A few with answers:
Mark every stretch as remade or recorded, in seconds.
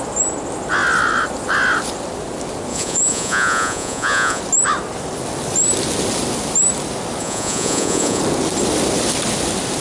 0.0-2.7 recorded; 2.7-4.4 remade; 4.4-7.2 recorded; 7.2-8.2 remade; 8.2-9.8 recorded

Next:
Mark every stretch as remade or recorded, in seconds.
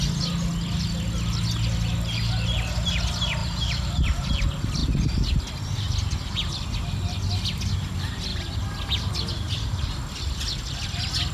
0.0-3.4 recorded; 3.4-4.3 remade; 4.3-11.3 recorded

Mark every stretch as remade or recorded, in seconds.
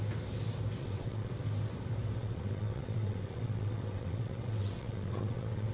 0.0-0.8 recorded; 0.8-1.3 remade; 1.3-2.2 recorded; 2.2-5.7 remade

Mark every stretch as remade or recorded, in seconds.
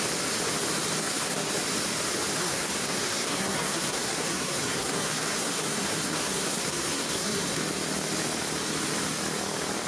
0.0-1.0 recorded; 1.0-1.5 remade; 1.5-2.4 recorded; 2.4-7.6 remade; 7.6-9.9 recorded